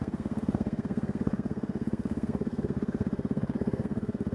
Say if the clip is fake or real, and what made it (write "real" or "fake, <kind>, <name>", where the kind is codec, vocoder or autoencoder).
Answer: fake, codec, SNAC